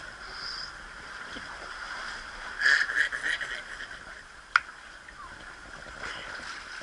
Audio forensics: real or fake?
real